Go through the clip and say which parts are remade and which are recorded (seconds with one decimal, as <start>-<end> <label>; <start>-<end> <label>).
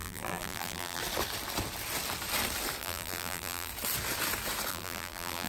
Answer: 0.0-1.0 remade; 1.0-2.8 recorded; 2.8-3.7 remade; 3.7-4.7 recorded; 4.7-5.5 remade